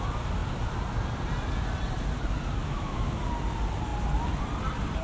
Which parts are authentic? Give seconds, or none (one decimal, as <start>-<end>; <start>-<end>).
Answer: 0.0-2.6; 3.2-5.0